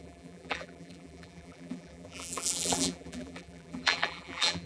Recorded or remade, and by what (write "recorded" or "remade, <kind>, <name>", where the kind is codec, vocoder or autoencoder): remade, vocoder, BigVGAN v2